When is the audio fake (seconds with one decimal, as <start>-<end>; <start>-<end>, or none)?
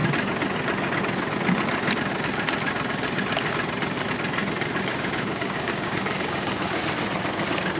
4.9-6.8